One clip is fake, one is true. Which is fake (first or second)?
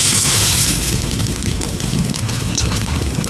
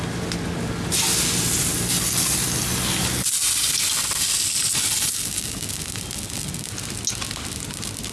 first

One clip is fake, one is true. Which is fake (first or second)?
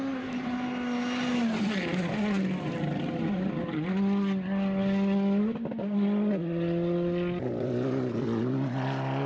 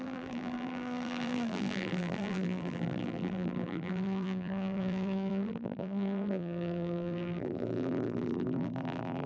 second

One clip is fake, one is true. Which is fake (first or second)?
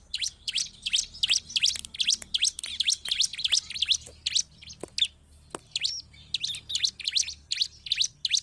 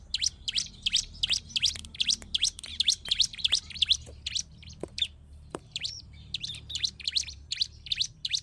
second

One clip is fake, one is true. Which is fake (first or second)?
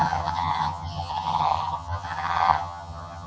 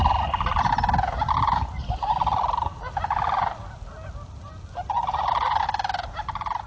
first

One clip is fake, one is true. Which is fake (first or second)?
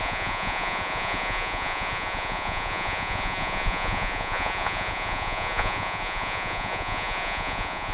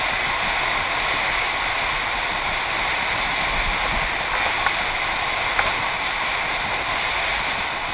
first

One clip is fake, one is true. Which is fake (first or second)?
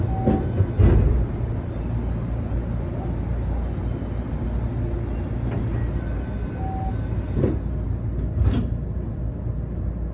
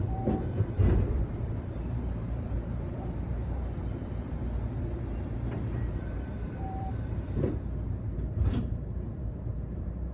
second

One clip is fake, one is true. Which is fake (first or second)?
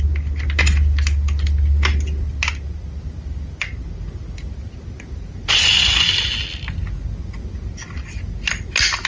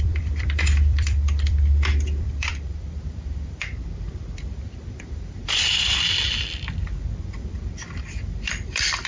second